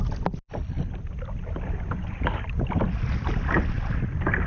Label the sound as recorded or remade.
recorded